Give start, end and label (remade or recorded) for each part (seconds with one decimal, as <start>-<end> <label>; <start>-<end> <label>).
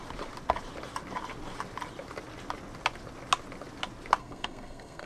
0.0-4.2 recorded; 4.2-5.1 remade